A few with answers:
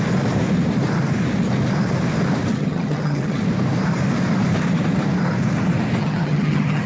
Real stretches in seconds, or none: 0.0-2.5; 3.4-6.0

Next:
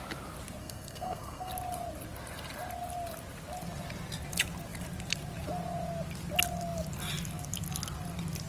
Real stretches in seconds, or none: 0.0-0.6; 1.5-8.5